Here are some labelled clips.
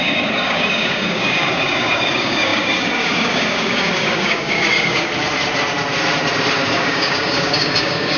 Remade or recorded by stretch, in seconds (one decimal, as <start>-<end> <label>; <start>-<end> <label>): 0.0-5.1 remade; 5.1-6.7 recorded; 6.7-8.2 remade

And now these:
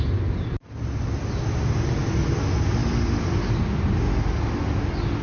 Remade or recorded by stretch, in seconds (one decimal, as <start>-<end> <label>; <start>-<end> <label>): 0.0-5.2 recorded

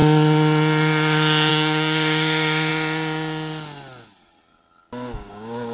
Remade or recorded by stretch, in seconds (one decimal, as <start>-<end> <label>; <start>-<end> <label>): 0.0-1.5 recorded; 1.5-2.7 remade; 2.7-5.3 recorded; 5.3-5.7 remade

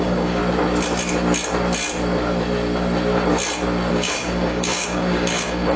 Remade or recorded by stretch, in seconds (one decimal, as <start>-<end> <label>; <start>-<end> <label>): 0.0-0.4 remade; 0.4-3.9 recorded; 3.9-5.8 remade

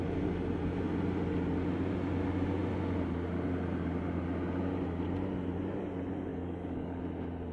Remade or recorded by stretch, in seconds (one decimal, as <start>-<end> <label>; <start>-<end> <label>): 0.0-6.3 recorded; 6.3-7.0 remade; 7.0-7.5 recorded

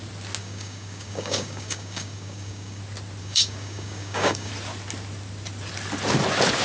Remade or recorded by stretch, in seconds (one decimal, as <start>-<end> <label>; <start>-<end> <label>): 0.0-0.4 recorded; 0.4-2.8 remade; 2.8-3.2 recorded; 3.2-4.5 remade; 4.5-6.6 recorded